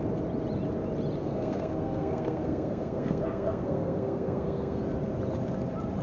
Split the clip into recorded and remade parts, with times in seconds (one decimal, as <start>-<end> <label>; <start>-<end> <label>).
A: 0.0-1.2 recorded; 1.2-4.8 remade; 4.8-6.0 recorded

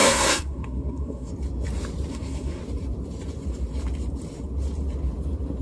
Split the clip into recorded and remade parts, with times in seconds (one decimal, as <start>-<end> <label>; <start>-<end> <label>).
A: 0.0-1.3 remade; 1.3-2.1 recorded; 2.1-2.6 remade; 2.6-5.6 recorded

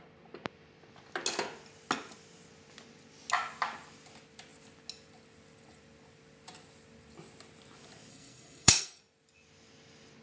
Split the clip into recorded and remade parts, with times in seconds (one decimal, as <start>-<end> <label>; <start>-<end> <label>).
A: 0.0-8.1 recorded; 8.1-9.0 remade; 9.0-10.2 recorded